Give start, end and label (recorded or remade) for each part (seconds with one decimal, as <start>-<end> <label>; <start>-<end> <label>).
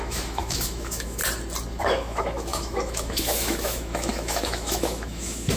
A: 0.0-1.2 remade; 1.2-1.8 recorded; 1.8-5.6 remade